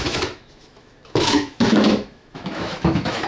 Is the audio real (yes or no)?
no